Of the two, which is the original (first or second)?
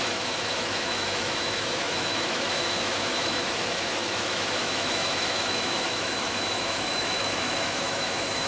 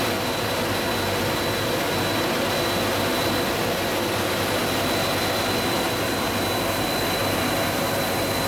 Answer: second